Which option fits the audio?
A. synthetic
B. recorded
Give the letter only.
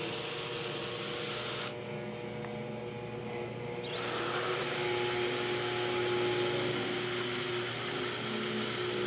B